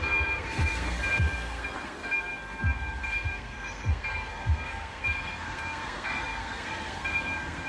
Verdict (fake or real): fake